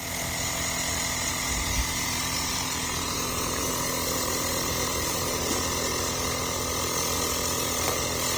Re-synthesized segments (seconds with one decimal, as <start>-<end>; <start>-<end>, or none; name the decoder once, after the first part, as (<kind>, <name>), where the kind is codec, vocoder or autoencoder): 1.8-3.7 (vocoder, BigVGAN v2); 4.9-5.4